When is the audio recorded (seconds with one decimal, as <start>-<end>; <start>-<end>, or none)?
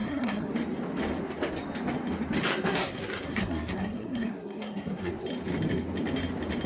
0.5-2.5; 5.1-6.7